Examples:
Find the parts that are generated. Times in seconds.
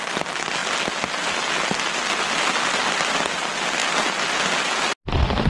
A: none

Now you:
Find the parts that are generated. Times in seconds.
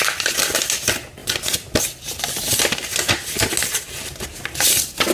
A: none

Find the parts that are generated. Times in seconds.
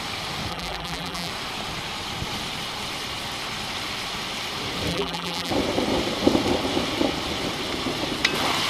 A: 0.5-1.3 (vocoder, BigVGAN v2); 4.9-5.5